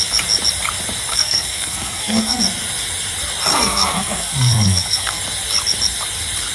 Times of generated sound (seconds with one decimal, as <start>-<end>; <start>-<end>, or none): 1.1-2.4; 3.5-5.2